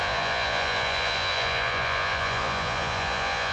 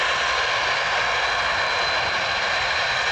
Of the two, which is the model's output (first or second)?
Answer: first